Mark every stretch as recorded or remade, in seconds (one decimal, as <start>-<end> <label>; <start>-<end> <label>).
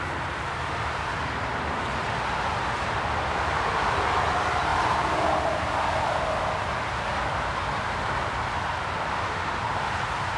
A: 0.0-9.1 recorded; 9.1-9.6 remade; 9.6-10.4 recorded